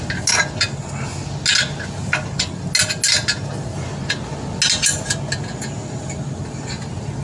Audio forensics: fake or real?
real